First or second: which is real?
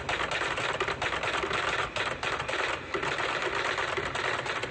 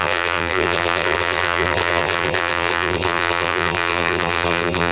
first